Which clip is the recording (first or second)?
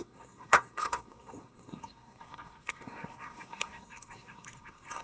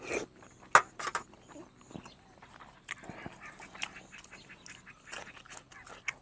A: second